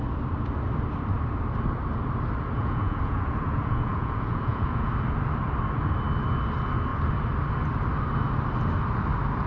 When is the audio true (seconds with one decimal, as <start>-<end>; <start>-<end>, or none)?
0.0-2.6; 4.9-9.5